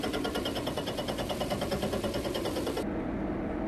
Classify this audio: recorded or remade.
recorded